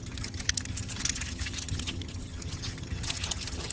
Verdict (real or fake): fake